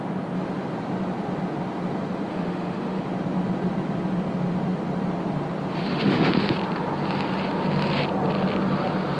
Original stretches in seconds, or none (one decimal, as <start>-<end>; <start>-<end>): 0.0-2.3; 3.0-5.7; 6.3-9.2